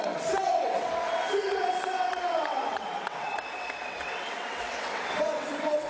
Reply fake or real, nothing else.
fake